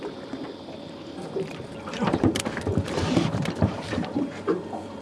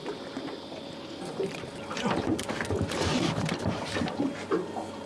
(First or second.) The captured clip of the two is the second